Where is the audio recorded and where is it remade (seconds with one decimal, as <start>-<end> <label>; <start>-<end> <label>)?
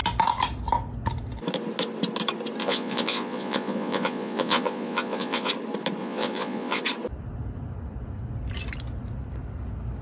0.0-2.6 recorded; 2.6-5.5 remade; 5.5-6.0 recorded; 6.0-6.8 remade; 6.8-10.0 recorded